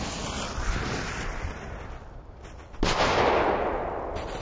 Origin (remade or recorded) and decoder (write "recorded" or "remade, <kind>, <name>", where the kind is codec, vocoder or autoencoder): recorded